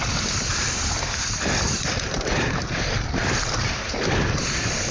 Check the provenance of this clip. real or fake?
fake